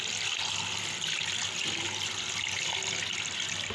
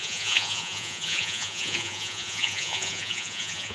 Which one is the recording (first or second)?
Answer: first